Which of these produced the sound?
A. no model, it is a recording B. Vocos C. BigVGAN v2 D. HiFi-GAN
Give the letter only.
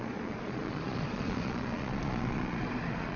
B